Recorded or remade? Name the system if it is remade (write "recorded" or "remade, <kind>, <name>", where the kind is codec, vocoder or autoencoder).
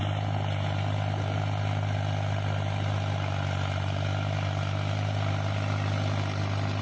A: recorded